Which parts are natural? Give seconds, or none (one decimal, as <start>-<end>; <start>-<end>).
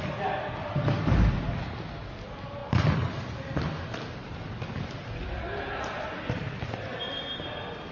0.0-7.9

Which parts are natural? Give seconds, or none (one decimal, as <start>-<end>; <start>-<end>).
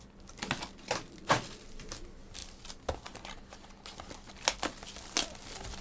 0.0-5.8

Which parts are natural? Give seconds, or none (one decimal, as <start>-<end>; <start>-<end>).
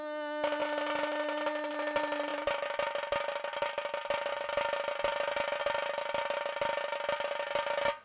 0.0-8.0